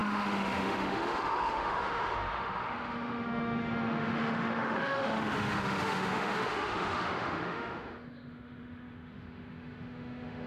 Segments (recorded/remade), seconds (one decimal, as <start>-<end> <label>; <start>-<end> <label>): 0.0-10.5 remade

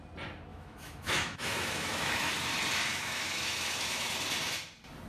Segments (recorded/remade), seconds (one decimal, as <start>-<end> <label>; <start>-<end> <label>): 0.0-0.5 recorded; 0.5-2.3 remade; 2.3-2.9 recorded; 2.9-4.1 remade; 4.1-5.1 recorded

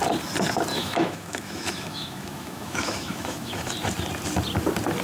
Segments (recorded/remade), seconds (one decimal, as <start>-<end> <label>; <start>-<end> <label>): 0.0-0.7 recorded; 0.7-3.7 remade; 3.7-5.0 recorded

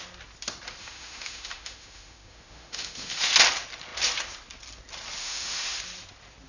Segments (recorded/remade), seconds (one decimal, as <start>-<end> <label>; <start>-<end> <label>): 0.0-0.8 recorded; 0.8-3.3 remade; 3.3-5.2 recorded; 5.2-5.8 remade; 5.8-6.5 recorded

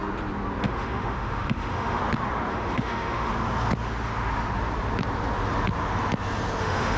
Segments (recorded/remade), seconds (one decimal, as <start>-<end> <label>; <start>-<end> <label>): 0.0-0.6 recorded; 0.6-2.0 remade; 2.0-2.5 recorded; 2.5-3.3 remade; 3.3-6.6 recorded; 6.6-7.0 remade

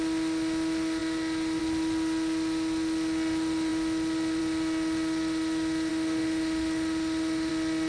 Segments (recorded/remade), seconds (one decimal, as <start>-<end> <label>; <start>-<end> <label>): 0.0-5.9 recorded; 5.9-7.5 remade; 7.5-7.9 recorded

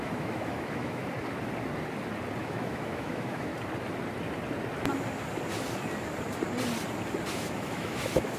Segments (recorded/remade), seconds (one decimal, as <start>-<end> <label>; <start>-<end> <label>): 0.0-1.0 remade; 1.0-2.4 recorded; 2.4-3.5 remade; 3.5-7.3 recorded; 7.3-8.4 remade

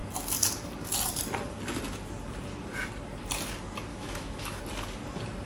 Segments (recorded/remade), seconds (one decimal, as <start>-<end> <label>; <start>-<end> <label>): 0.0-3.9 recorded; 3.9-4.6 remade; 4.6-5.5 recorded